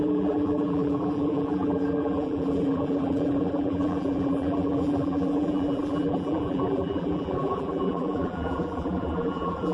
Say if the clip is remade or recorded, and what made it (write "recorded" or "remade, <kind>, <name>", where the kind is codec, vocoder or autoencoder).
remade, vocoder, BigVGAN v2